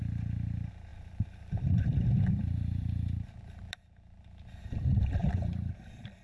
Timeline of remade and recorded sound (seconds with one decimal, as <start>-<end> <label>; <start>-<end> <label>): 0.0-0.9 recorded; 0.9-4.6 remade; 4.6-5.2 recorded; 5.2-6.2 remade